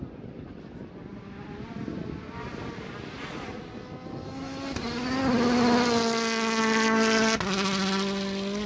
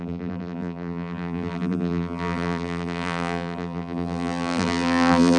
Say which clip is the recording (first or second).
first